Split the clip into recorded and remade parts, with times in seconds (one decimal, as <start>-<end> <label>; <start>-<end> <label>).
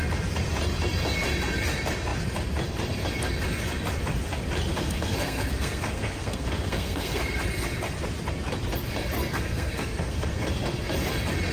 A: 0.0-4.7 recorded; 4.7-7.2 remade; 7.2-9.2 recorded; 9.2-10.5 remade; 10.5-11.5 recorded